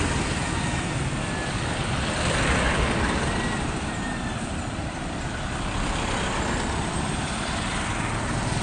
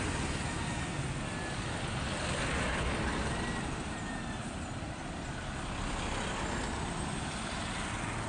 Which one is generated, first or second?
first